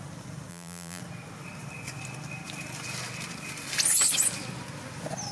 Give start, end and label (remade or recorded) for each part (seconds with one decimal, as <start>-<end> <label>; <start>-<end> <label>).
0.0-0.5 recorded; 0.5-1.0 remade; 1.0-5.3 recorded